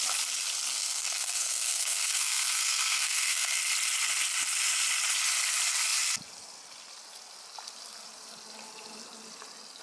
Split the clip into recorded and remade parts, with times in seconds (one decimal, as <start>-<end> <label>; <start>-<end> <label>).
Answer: 0.0-0.7 recorded; 0.7-3.6 remade; 3.6-9.8 recorded